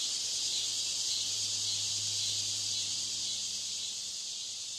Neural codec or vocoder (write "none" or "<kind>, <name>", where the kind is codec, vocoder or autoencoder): none